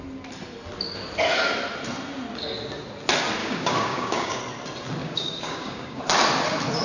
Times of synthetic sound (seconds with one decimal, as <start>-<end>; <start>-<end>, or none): 3.4-4.4; 5.0-6.0